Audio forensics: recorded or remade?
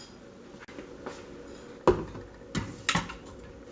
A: recorded